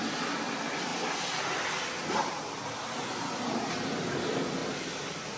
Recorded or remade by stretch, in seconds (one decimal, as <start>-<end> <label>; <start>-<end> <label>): 0.0-4.6 recorded; 4.6-5.4 remade